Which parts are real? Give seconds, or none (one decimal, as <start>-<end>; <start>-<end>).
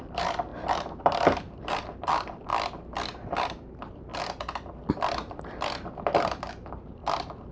2.5-3.3; 4.1-6.5; 7.0-7.5